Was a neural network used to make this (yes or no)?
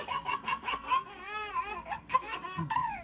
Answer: yes